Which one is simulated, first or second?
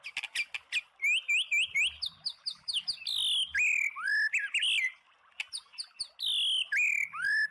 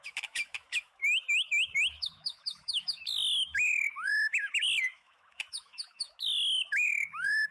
second